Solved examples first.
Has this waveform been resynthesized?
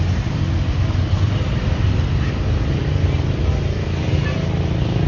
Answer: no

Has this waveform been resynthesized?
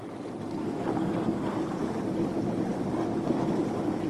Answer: no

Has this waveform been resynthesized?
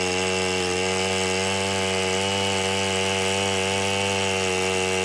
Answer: no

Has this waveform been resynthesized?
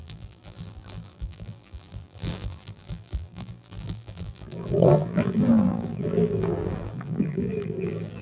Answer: yes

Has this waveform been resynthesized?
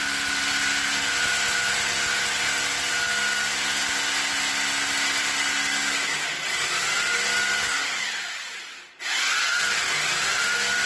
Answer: no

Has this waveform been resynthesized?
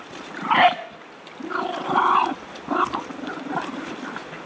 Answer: no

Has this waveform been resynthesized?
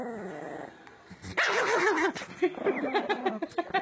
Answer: no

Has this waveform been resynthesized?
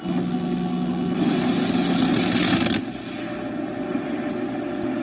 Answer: no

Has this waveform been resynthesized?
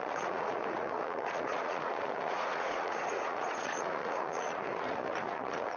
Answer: yes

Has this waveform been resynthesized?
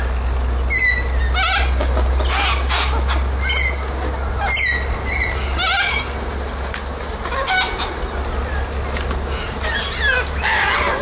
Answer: no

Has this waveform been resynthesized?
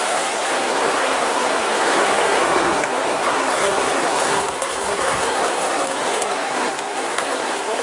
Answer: yes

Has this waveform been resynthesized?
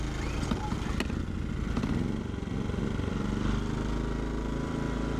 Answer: no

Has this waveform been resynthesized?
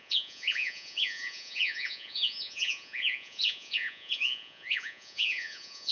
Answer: yes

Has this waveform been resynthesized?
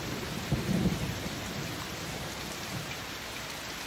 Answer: yes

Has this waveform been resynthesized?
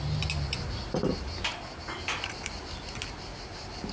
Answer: no